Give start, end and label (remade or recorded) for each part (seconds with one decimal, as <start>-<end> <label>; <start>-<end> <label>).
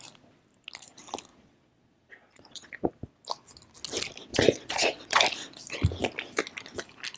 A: 0.0-1.3 recorded; 1.3-2.9 remade; 2.9-4.3 recorded; 4.3-5.2 remade; 5.2-7.2 recorded